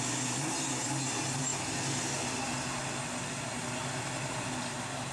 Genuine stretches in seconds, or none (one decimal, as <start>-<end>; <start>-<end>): 0.0-5.1